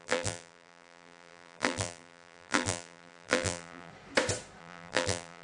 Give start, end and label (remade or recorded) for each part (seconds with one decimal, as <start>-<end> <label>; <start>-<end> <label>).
0.0-3.9 remade; 3.9-4.6 recorded; 4.6-5.4 remade